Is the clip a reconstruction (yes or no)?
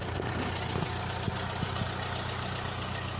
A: no